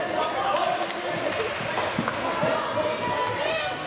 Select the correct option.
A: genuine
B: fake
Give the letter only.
A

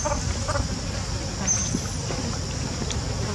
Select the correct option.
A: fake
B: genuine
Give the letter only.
B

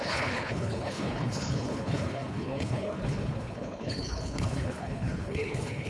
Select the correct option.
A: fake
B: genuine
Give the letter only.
A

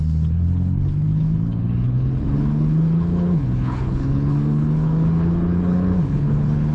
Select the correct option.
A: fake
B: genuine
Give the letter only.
A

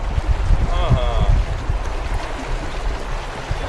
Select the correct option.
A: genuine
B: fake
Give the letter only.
A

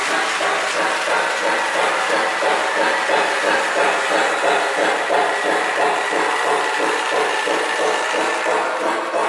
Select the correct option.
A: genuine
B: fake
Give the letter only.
A